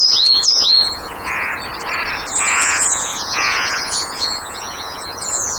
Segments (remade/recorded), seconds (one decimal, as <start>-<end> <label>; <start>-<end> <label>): 0.0-1.5 remade; 1.5-2.4 recorded; 2.4-5.6 remade